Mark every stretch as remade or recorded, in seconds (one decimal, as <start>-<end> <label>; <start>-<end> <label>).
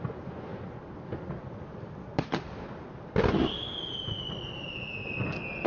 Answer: 0.0-5.7 recorded